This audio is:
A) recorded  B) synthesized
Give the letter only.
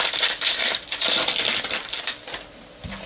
A